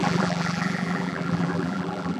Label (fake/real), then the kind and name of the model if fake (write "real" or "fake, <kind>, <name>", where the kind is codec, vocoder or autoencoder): fake, vocoder, BigVGAN v2